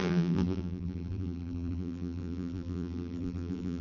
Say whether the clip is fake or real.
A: fake